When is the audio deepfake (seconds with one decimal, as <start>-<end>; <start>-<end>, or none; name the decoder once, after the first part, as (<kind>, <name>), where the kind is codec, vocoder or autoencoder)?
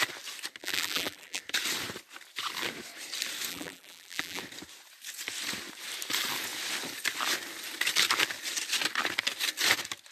0.6-1.4 (vocoder, BigVGAN v2); 3.5-4.4